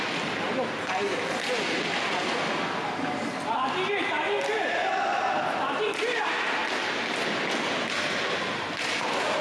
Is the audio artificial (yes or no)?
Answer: no